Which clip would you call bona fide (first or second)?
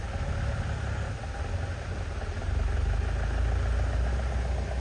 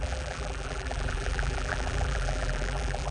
first